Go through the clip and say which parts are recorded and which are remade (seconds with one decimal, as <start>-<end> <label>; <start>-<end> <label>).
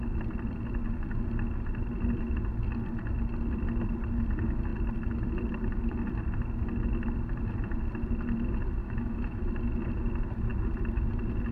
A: 0.0-8.8 recorded; 8.8-9.4 remade; 9.4-11.5 recorded